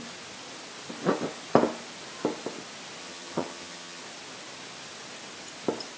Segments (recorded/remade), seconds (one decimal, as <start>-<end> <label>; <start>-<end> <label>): 0.0-3.0 recorded; 3.0-4.0 remade; 4.0-6.0 recorded